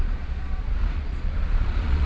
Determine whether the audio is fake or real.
fake